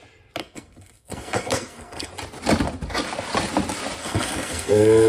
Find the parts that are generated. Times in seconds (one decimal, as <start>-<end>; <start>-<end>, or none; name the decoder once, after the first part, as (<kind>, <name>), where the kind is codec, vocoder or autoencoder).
0.4-2.1 (codec, SNAC); 4.0-5.1